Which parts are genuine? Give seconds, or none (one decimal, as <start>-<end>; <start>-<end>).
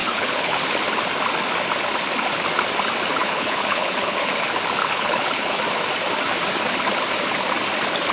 0.6-3.2; 4.3-4.8; 5.6-8.1